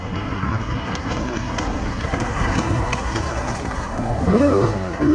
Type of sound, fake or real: fake